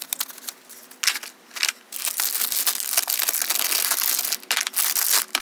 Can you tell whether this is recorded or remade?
recorded